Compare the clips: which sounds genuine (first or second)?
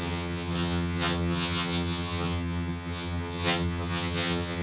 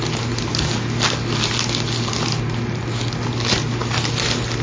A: second